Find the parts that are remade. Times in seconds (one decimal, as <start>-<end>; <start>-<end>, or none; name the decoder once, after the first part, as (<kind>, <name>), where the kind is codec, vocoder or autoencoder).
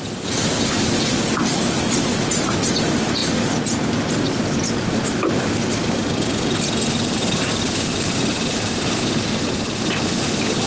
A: none